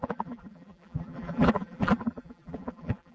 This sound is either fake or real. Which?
fake